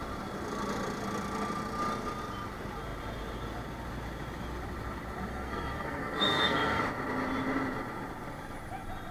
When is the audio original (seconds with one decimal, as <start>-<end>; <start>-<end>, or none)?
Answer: 0.0-5.3; 6.8-9.1